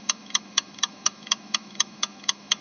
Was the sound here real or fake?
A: fake